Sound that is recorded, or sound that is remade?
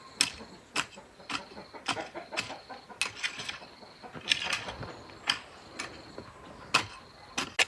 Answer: recorded